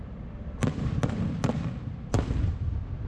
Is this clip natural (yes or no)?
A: yes